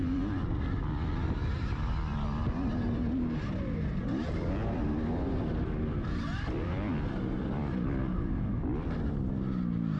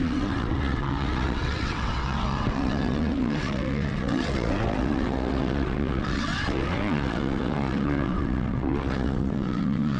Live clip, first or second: first